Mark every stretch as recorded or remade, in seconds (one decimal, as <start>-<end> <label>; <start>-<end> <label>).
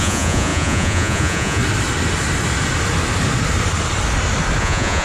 0.0-1.6 remade; 1.6-4.6 recorded; 4.6-5.0 remade